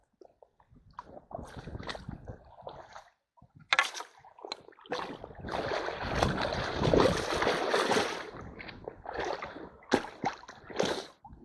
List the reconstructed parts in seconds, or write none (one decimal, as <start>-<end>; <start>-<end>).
none